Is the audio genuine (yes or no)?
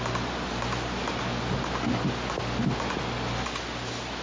yes